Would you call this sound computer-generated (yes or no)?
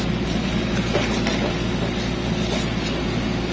no